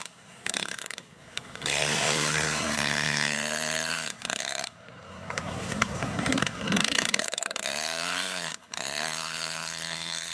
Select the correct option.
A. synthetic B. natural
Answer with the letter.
A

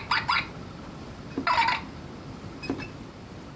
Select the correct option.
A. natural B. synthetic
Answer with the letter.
A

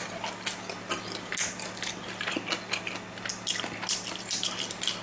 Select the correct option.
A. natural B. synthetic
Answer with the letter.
A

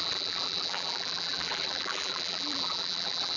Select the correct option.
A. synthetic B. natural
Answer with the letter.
A